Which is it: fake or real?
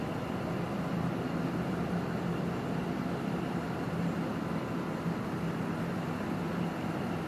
real